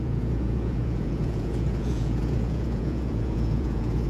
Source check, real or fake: fake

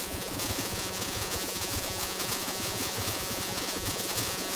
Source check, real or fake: fake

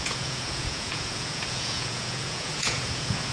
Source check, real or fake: fake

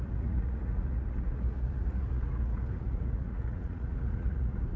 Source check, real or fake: fake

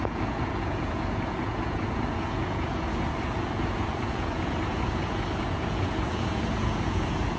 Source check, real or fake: fake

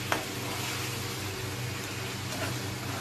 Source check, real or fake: real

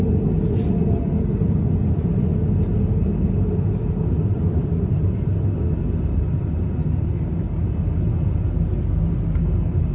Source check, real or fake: real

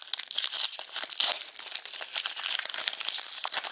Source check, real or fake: real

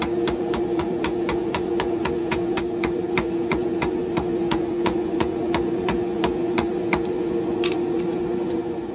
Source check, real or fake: fake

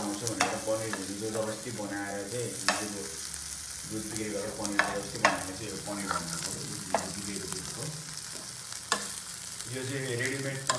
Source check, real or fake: real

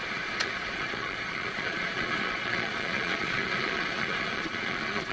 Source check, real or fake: fake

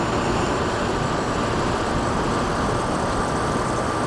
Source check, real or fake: real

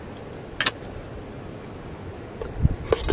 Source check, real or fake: real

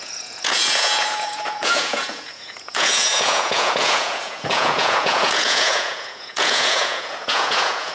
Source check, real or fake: fake